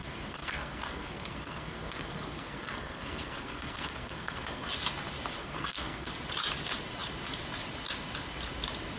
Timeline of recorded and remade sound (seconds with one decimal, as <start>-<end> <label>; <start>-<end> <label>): 0.0-4.7 remade; 4.7-5.4 recorded; 5.4-6.1 remade; 6.1-9.0 recorded